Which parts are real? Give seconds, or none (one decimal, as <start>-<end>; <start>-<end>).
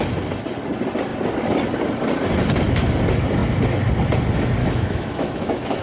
0.0-4.6